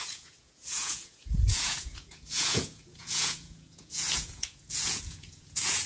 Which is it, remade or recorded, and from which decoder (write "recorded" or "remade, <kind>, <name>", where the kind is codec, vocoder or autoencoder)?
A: remade, vocoder, Vocos